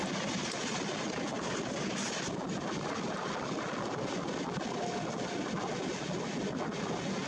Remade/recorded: recorded